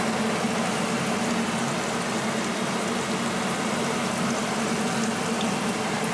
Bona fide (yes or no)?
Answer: yes